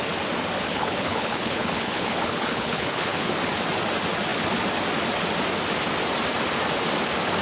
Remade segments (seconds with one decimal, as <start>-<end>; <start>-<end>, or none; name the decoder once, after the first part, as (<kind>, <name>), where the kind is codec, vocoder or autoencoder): 0.7-3.3 (codec, HILCodec)